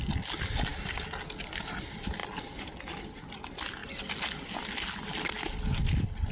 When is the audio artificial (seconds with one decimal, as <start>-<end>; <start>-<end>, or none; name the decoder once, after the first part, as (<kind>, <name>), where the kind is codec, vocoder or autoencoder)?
2.2-3.0 (vocoder, BigVGAN v2); 3.8-4.6